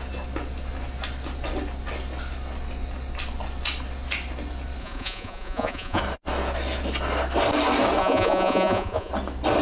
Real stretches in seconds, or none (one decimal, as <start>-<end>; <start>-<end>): 0.0-4.8; 6.0-8.0; 9.1-9.6

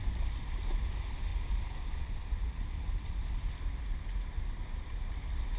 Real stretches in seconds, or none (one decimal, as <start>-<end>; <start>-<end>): 0.0-1.3; 2.0-5.6

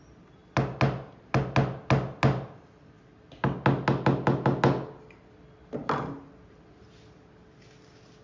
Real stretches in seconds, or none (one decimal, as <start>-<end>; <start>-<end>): 0.0-8.2

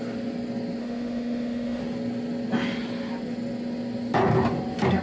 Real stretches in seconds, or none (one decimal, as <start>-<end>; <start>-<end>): 0.0-0.8; 1.8-5.0